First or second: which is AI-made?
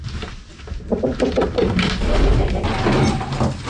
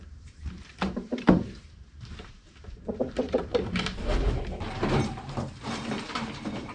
second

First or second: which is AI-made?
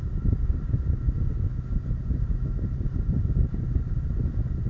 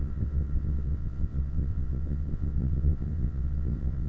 second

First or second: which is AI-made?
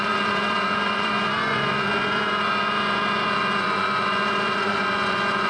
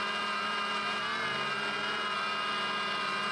first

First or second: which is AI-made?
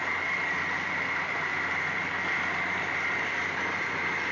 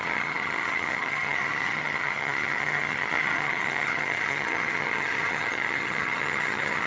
second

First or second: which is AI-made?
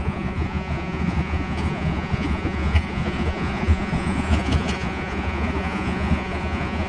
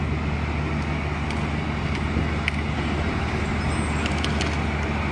first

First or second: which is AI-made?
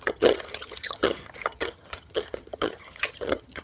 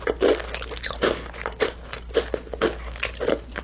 first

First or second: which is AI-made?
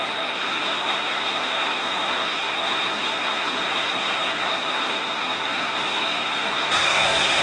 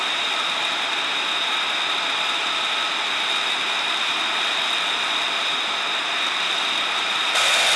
first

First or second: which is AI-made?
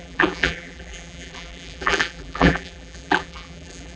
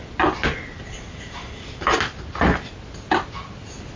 first